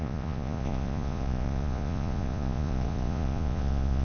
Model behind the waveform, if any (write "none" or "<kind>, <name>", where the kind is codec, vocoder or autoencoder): vocoder, Vocos